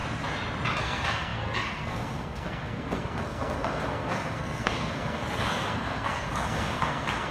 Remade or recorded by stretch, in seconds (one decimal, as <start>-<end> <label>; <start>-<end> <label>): 0.0-0.8 recorded; 0.8-7.3 remade